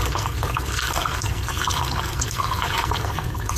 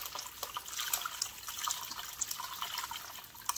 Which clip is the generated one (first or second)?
first